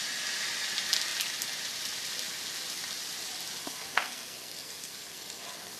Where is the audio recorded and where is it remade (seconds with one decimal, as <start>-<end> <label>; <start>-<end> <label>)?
0.0-3.6 recorded; 3.6-5.8 remade